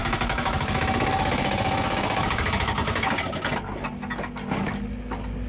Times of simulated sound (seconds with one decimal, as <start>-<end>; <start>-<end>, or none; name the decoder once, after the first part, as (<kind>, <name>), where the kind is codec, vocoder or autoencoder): 0.0-3.1 (autoencoder, DAC-VAE)